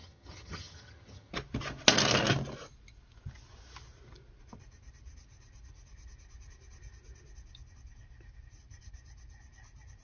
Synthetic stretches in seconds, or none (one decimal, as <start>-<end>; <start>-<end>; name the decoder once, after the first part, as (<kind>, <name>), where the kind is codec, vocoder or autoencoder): 0.0-1.3 (vocoder, HiFi-GAN)